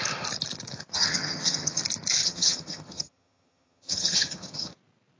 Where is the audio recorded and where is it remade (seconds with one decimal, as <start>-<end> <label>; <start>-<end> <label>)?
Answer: 0.0-0.9 recorded; 0.9-1.8 remade; 1.8-2.2 recorded; 2.2-4.7 remade; 4.7-5.2 recorded